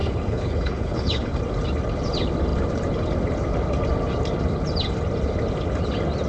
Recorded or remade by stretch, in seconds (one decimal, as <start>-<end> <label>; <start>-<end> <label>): 0.0-1.4 remade; 1.4-6.3 recorded